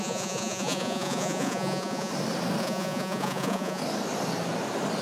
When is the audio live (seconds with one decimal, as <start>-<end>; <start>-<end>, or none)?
2.1-2.6; 3.8-5.0

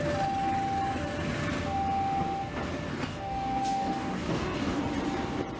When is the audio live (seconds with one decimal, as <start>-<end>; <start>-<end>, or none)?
0.0-2.9; 4.8-5.6

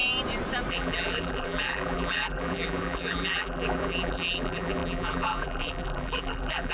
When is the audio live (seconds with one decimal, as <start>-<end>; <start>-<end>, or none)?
0.0-0.7